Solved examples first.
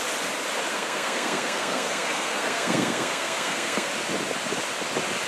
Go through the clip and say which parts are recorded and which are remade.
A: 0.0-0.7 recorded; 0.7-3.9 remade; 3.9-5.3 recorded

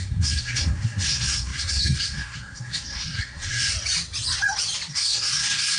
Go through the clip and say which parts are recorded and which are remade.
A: 0.0-3.7 remade; 3.7-4.9 recorded; 4.9-5.8 remade

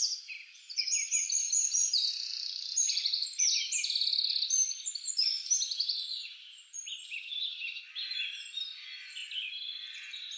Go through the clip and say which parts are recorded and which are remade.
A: 0.0-2.3 remade; 2.3-2.9 recorded; 2.9-9.2 remade; 9.2-10.4 recorded